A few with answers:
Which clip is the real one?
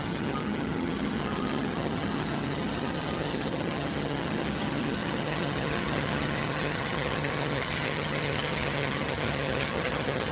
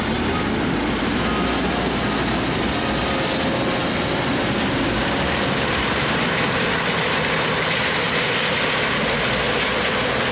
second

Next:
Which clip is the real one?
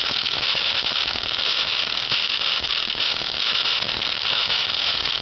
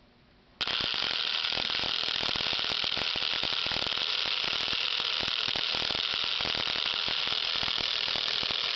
second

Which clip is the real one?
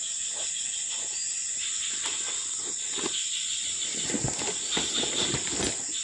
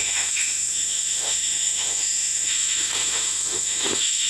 first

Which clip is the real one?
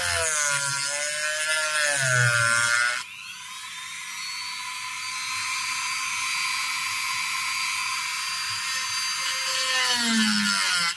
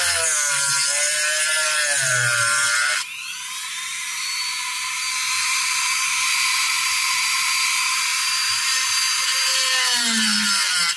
first